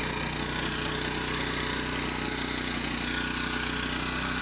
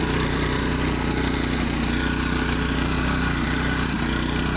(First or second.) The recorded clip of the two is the first